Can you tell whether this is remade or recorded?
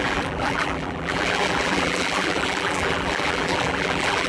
remade